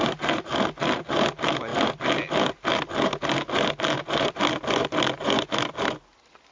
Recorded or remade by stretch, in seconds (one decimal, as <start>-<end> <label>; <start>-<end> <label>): 0.0-6.5 recorded